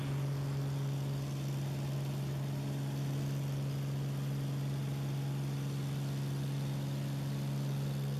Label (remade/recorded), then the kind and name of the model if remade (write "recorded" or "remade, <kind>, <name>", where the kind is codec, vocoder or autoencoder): recorded